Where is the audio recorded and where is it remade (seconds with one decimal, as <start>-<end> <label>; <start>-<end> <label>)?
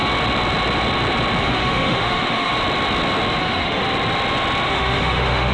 0.0-1.4 recorded; 1.4-2.5 remade; 2.5-3.4 recorded; 3.4-3.8 remade; 3.8-4.7 recorded; 4.7-5.5 remade